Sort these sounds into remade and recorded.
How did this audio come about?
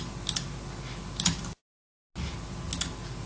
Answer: recorded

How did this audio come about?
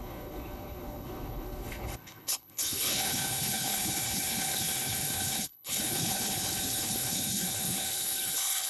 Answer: remade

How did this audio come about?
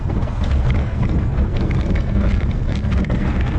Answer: remade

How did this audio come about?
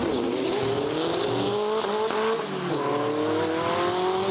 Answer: recorded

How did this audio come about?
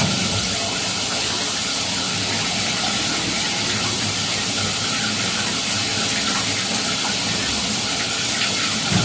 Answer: recorded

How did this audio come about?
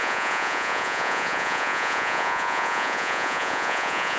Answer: remade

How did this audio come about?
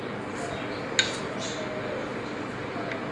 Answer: recorded